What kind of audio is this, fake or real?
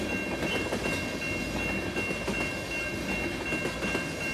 real